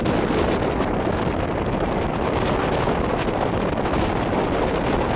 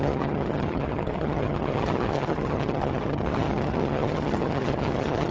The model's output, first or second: second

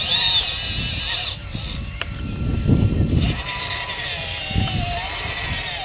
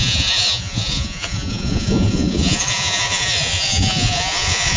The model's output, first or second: second